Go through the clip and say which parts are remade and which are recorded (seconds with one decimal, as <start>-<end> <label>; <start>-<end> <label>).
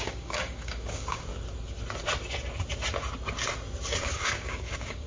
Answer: 0.0-1.3 remade; 1.3-4.0 recorded; 4.0-5.1 remade